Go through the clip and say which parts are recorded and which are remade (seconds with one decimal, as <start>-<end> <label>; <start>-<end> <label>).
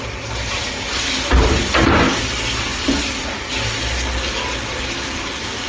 0.0-5.7 recorded